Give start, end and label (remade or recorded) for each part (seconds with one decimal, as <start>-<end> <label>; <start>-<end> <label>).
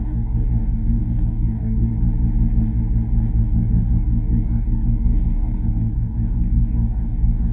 0.0-1.9 remade; 1.9-3.4 recorded; 3.4-7.5 remade